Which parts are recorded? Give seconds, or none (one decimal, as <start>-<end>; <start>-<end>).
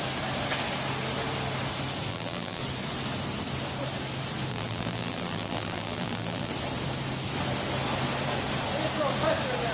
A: 0.0-2.1; 2.6-4.5; 6.5-9.7